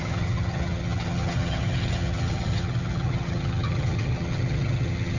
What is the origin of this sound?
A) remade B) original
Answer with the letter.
A